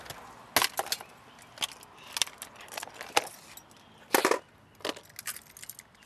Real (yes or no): yes